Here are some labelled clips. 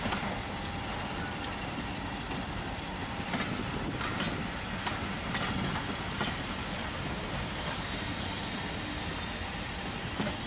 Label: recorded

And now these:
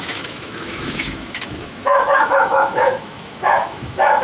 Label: remade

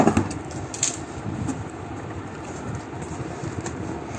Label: recorded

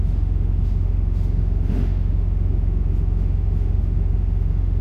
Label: remade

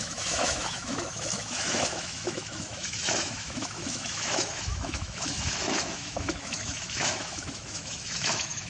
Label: remade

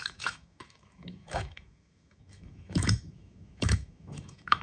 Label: remade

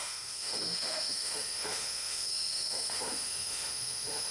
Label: remade